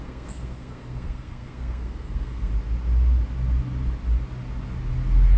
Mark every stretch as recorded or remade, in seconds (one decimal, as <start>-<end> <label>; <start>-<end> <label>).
0.0-2.5 remade; 2.5-5.4 recorded